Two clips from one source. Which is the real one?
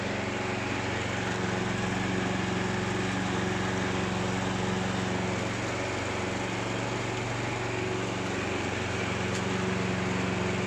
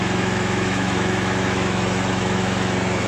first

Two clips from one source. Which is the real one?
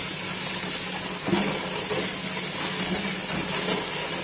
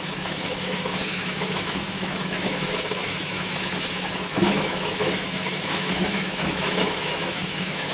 first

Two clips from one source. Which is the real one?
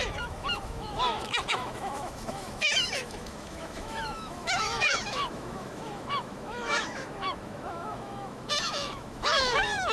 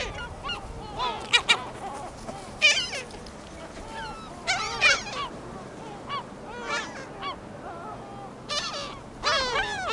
second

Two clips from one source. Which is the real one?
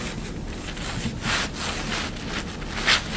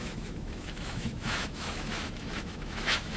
first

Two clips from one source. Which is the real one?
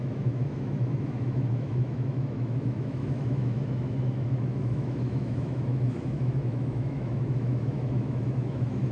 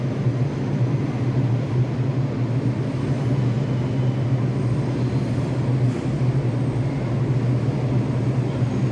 second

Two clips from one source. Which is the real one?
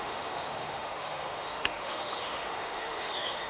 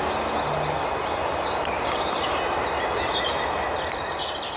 second